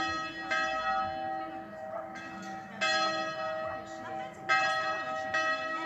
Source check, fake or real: real